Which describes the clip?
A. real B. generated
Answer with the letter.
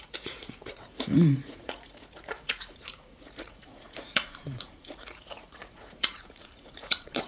B